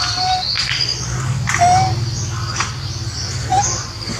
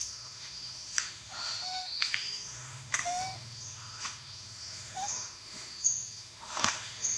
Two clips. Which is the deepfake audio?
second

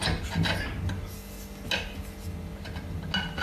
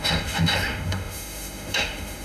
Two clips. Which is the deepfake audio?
second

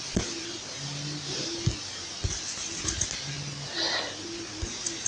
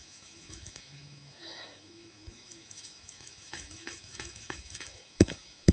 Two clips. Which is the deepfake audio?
second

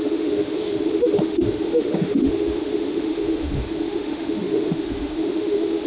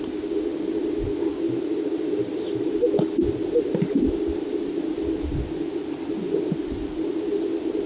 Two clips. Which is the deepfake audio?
first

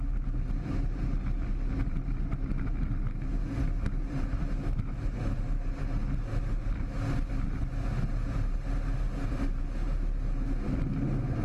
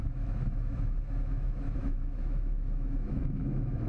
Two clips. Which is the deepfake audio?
second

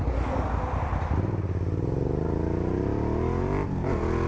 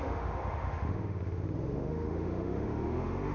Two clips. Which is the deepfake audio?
second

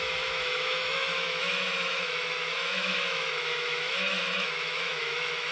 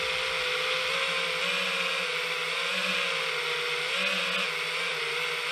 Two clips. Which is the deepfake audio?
first